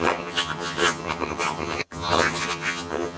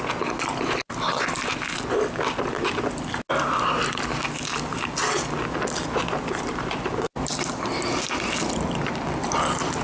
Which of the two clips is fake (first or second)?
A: first